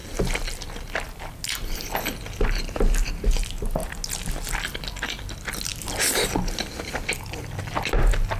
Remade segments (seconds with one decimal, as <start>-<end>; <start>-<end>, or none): none